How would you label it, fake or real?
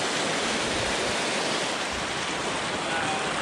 real